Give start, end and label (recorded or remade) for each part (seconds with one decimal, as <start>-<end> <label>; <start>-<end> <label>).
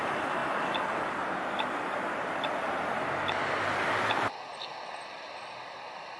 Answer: 0.0-6.2 recorded